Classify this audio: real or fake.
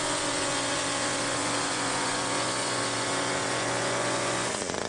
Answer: fake